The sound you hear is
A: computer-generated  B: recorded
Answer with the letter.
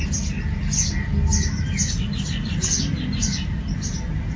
B